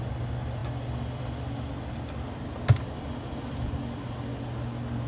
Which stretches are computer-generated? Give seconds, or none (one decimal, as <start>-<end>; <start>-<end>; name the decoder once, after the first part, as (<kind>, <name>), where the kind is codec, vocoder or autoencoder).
none